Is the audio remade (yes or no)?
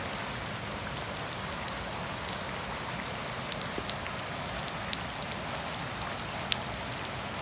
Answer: no